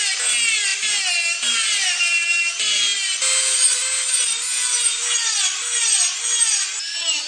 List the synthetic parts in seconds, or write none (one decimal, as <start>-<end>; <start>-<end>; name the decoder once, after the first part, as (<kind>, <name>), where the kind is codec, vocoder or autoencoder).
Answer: none